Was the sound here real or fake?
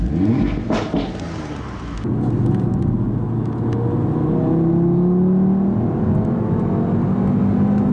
real